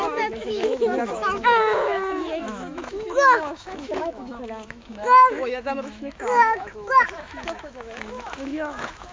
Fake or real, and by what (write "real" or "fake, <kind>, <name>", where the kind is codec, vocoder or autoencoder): fake, autoencoder, DAC-VAE